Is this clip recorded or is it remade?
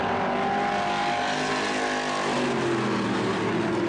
recorded